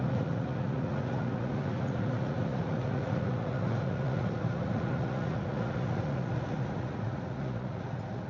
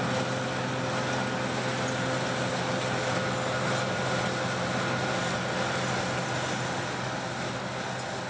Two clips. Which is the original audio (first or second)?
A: second